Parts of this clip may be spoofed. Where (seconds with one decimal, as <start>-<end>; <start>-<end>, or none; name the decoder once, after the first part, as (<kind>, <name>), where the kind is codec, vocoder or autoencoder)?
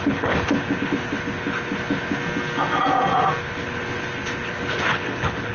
0.0-2.2 (codec, HILCodec); 3.4-5.5